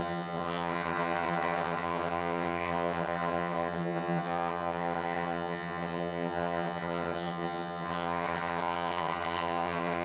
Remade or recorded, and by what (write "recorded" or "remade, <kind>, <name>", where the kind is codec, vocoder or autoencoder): remade, vocoder, HiFi-GAN